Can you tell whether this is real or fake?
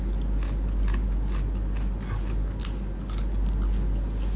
real